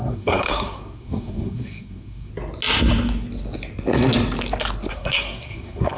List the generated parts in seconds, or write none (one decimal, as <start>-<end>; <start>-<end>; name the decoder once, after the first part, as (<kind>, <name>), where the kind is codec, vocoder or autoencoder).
0.0-2.3 (codec, SNAC); 4.9-6.0